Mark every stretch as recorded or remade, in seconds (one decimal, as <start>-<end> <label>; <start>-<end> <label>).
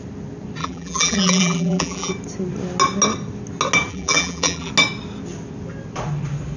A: 0.0-0.6 recorded; 0.6-2.1 remade; 2.1-3.9 recorded; 3.9-4.7 remade; 4.7-6.6 recorded